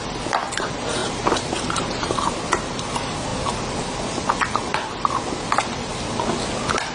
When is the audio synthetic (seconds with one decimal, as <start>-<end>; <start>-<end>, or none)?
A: 1.0-2.8